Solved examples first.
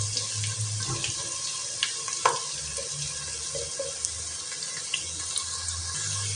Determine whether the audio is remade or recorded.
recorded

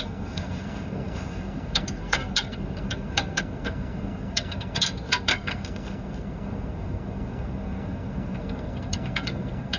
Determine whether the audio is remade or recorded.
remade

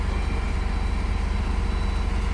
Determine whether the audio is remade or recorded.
recorded